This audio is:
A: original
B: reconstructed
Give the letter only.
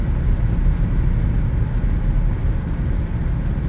A